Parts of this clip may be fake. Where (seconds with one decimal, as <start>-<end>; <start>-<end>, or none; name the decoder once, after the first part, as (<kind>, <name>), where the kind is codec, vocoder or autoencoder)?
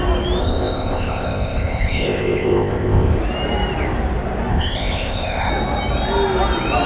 0.4-3.2 (codec, ZipCodec); 4.5-5.5